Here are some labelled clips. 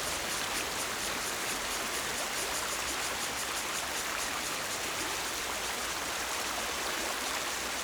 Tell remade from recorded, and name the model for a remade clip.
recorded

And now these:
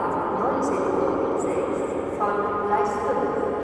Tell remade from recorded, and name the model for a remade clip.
recorded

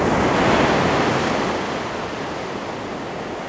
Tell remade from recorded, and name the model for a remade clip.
recorded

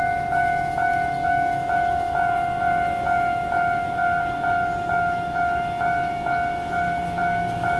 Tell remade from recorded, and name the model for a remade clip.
remade, autoencoder, DAC-VAE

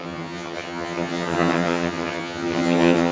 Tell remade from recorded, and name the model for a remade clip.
remade, vocoder, HiFi-GAN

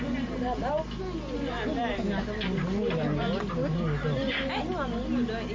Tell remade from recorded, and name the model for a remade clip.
recorded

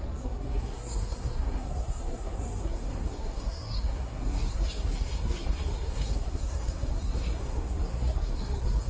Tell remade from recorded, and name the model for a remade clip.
remade, codec, SNAC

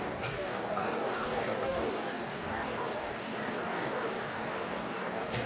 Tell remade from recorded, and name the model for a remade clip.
remade, codec, DAC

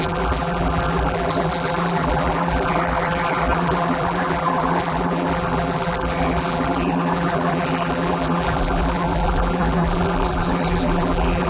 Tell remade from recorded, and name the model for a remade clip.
remade, vocoder, BigVGAN v2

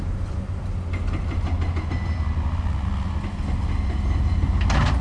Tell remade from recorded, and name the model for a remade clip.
recorded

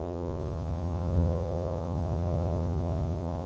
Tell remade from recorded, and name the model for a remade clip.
remade, vocoder, Vocos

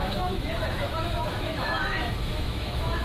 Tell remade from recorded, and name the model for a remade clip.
remade, autoencoder, DAC-VAE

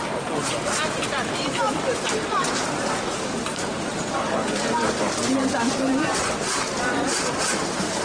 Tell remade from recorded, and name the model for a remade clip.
remade, vocoder, BigVGAN v2